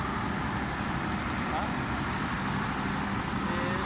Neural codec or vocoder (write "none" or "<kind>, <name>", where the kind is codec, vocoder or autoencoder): none